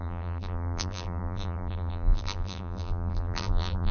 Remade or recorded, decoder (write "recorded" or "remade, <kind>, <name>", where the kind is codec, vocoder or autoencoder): remade, vocoder, BigVGAN v2